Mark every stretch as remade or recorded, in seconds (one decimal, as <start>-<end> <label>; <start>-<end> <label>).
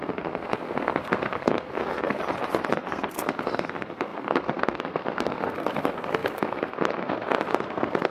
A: 0.0-2.2 remade; 2.2-2.7 recorded; 2.7-8.1 remade